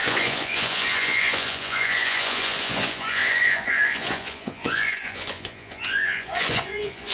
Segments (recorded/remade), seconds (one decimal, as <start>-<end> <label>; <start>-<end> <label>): 0.0-7.1 remade